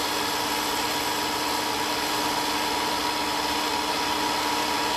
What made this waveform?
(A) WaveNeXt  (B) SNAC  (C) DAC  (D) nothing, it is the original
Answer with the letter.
D